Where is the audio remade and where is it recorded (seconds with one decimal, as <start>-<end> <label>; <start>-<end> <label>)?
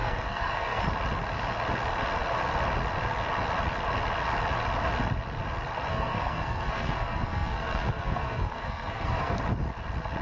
0.0-0.8 remade; 0.8-5.9 recorded; 5.9-9.4 remade; 9.4-10.2 recorded